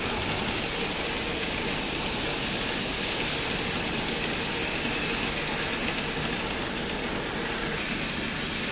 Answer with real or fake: real